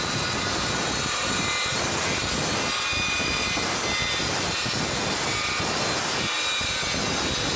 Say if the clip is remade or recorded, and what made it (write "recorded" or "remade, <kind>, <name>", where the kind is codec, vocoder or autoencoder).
recorded